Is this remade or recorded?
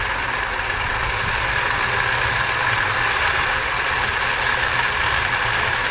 recorded